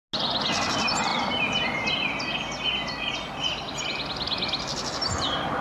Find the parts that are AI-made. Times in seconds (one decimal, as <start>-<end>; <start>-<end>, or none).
none